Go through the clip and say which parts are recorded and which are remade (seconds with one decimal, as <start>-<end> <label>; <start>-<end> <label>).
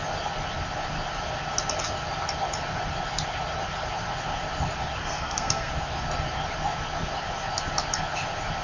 0.0-5.0 recorded; 5.0-5.7 remade; 5.7-8.6 recorded